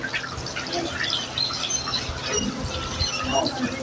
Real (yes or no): yes